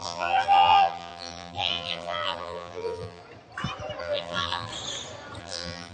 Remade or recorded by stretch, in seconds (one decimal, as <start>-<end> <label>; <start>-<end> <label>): 0.0-3.2 remade; 3.2-4.0 recorded; 4.0-4.7 remade; 4.7-5.4 recorded; 5.4-5.9 remade